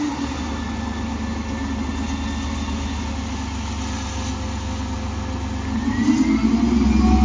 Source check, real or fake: real